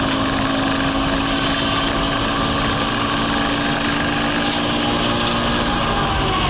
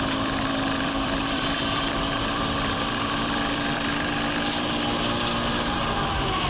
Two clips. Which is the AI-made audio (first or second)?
second